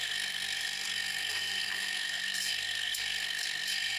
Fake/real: fake